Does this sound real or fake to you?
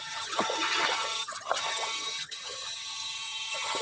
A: fake